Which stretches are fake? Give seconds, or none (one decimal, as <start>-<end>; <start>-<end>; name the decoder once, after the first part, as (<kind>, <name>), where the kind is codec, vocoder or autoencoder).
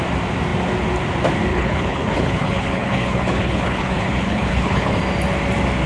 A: 1.5-5.0 (codec, HILCodec)